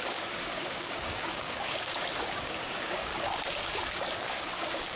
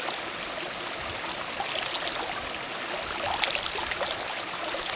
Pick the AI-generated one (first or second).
first